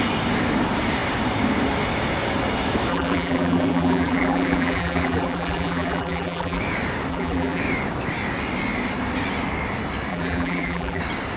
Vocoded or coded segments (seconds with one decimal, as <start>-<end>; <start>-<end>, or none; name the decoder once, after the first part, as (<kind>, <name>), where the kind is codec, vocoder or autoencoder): 2.9-6.6 (vocoder, BigVGAN v2); 7.1-7.6; 10.1-11.0